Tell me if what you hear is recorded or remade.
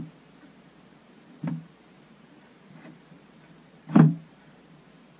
remade